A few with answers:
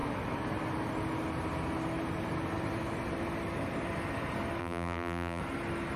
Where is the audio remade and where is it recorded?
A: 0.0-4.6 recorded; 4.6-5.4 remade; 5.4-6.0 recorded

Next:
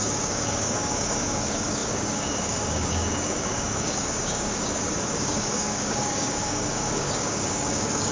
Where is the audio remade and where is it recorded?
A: 0.0-8.1 remade